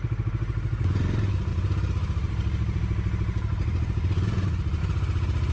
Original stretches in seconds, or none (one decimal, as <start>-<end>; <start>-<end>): 0.0-1.5; 4.8-5.5